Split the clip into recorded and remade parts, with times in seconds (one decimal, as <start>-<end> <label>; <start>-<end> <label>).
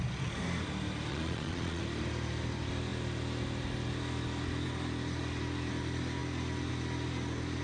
0.0-1.1 recorded; 1.1-1.8 remade; 1.8-7.6 recorded